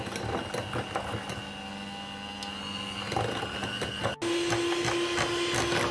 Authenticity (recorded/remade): recorded